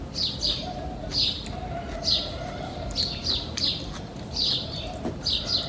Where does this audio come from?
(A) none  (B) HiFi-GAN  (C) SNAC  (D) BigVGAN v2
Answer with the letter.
A